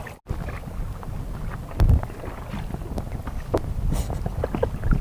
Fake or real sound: real